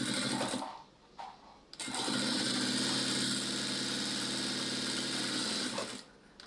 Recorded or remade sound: recorded